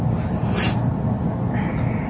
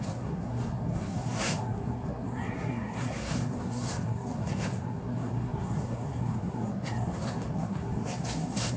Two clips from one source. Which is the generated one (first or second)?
second